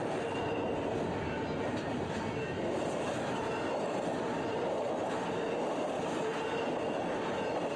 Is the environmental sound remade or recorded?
recorded